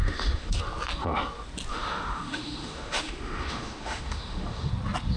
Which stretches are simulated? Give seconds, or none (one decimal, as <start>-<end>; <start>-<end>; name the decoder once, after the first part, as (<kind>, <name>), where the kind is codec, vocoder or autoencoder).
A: 0.0-0.6 (autoencoder, DAC-VAE); 1.7-4.7